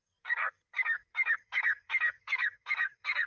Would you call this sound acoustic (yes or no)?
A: no